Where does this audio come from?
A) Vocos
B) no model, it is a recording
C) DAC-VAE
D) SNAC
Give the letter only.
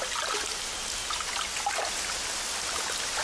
B